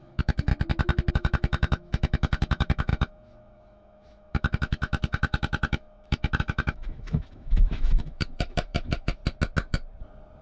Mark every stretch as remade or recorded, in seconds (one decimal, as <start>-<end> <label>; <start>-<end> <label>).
0.0-0.5 remade; 0.5-1.1 recorded; 1.1-9.2 remade; 9.2-10.4 recorded